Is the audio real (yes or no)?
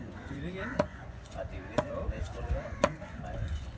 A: no